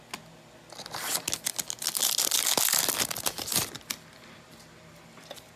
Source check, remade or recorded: recorded